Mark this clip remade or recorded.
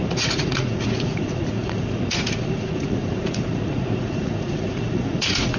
remade